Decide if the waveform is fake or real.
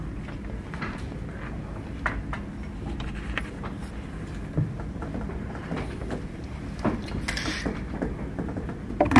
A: real